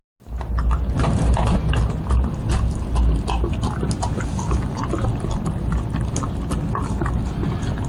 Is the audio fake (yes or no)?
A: no